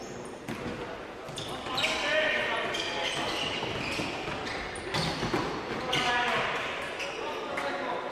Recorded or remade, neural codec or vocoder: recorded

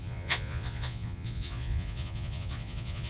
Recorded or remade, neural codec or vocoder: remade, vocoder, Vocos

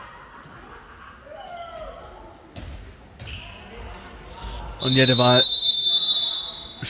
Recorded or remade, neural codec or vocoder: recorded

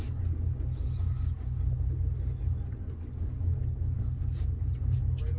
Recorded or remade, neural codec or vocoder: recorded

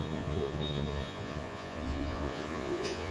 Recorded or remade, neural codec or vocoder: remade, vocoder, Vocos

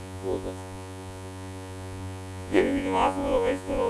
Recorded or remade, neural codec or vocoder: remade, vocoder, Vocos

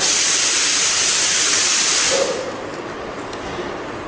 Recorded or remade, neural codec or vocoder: recorded